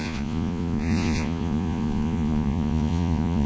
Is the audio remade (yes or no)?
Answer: yes